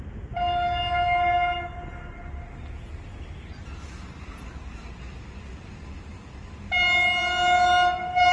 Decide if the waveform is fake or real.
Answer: real